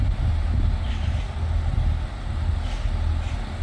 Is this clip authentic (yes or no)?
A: yes